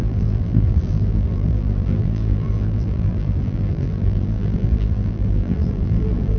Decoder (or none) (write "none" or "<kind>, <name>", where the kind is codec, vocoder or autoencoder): vocoder, BigVGAN v2